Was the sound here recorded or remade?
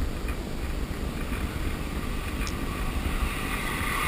recorded